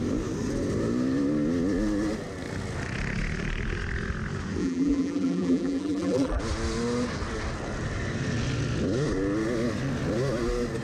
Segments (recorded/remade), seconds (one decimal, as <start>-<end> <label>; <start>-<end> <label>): 0.0-4.6 recorded; 4.6-6.4 remade; 6.4-10.8 recorded